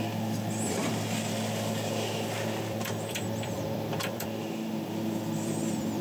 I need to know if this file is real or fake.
fake